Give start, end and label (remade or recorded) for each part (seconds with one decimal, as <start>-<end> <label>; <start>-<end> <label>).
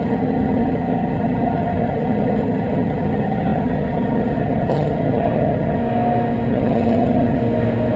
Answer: 0.0-5.8 remade; 5.8-6.5 recorded; 6.5-7.4 remade; 7.4-8.0 recorded